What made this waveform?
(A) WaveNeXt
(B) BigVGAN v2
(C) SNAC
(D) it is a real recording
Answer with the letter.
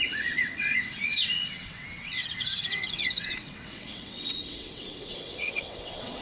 A